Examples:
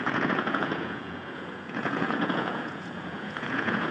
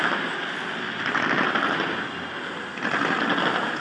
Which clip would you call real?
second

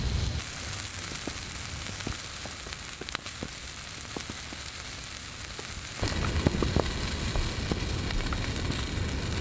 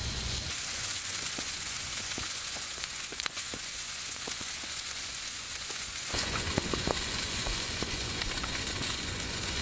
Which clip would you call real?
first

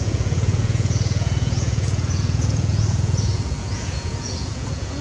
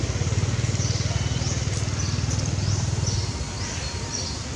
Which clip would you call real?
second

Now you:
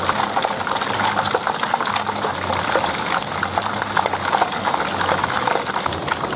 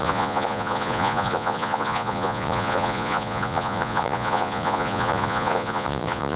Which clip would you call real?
first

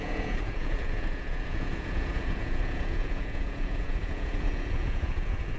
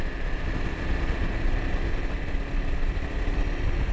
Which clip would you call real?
second